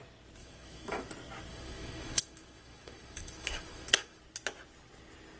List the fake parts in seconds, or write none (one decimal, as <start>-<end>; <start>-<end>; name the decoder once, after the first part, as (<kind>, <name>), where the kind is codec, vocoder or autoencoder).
0.4-1.1 (autoencoder, DAC-VAE); 1.5-4.2